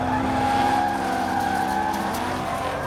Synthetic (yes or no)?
no